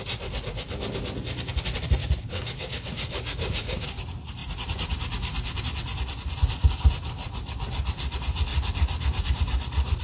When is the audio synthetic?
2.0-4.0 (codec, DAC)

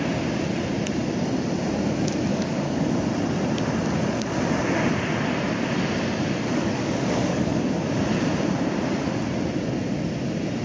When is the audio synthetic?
2.3-2.9 (codec, DAC); 6.5-7.6

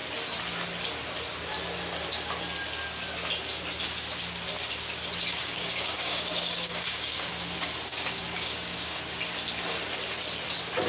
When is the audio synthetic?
5.3-7.3 (codec, DAC); 7.9-9.0

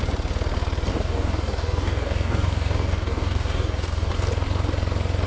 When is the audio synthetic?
0.9-4.1 (codec, DAC)